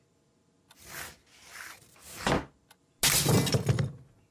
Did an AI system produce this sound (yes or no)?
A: no